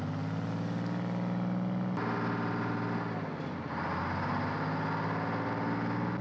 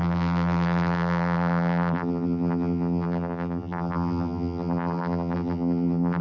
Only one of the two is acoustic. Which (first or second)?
first